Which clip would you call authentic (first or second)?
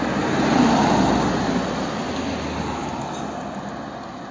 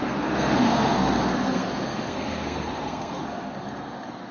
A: first